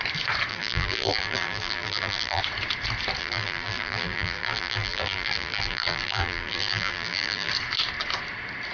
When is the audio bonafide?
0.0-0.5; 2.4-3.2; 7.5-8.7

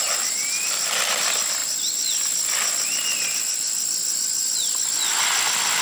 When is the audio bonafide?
0.5-1.6; 2.2-5.8

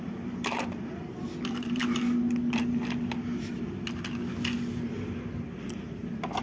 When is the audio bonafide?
1.8-5.6

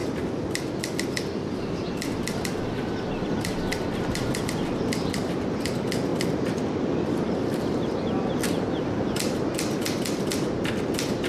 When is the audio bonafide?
0.0-11.3